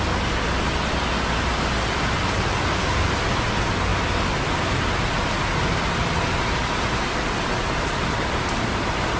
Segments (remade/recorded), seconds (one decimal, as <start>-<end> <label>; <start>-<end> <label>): 0.0-9.2 recorded